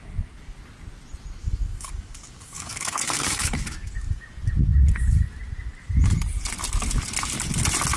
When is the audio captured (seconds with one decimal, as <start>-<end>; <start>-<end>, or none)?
0.0-1.4; 4.2-8.0